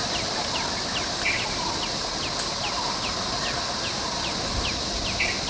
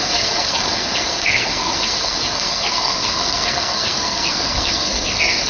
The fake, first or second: second